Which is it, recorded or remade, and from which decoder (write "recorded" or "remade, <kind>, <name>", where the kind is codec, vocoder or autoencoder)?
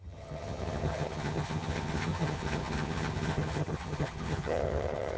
remade, vocoder, HiFi-GAN